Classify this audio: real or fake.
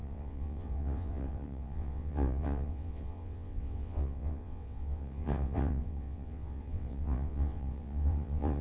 fake